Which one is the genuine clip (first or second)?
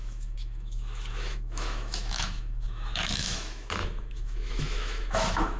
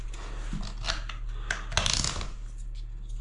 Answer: second